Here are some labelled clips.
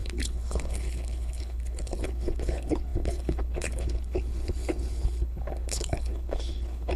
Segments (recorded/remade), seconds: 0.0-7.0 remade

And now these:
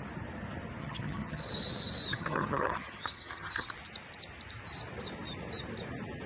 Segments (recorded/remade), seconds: 0.0-0.8 recorded; 0.8-1.4 remade; 1.4-2.1 recorded; 2.1-3.7 remade; 3.7-6.3 recorded

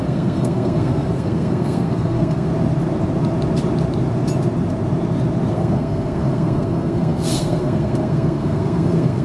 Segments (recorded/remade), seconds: 0.0-2.5 remade; 2.5-5.5 recorded; 5.5-9.2 remade